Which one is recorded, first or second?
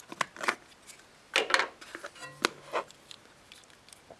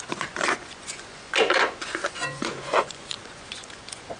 first